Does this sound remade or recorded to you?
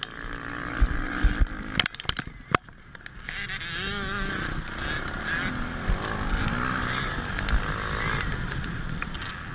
recorded